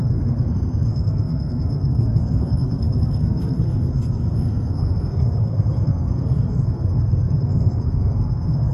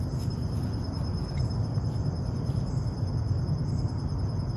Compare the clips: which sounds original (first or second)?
second